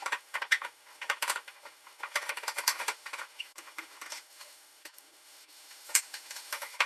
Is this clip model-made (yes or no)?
yes